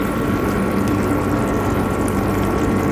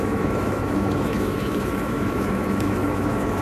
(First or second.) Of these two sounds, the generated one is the second